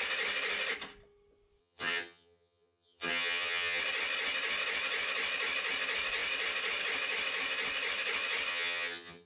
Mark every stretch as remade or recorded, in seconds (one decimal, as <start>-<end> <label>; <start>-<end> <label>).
0.0-1.6 recorded; 1.6-3.8 remade; 3.8-8.5 recorded; 8.5-9.3 remade